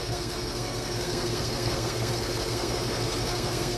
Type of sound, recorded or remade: remade